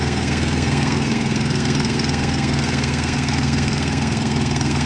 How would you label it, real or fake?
fake